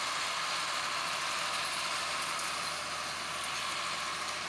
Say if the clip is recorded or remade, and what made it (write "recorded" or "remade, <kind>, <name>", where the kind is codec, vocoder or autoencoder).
recorded